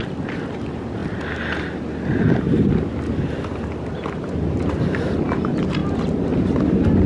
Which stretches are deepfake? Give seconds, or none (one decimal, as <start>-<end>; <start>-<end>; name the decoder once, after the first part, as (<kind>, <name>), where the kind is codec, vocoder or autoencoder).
none